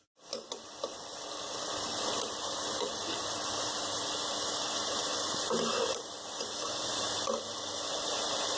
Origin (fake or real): real